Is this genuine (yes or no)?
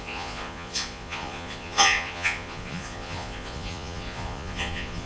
no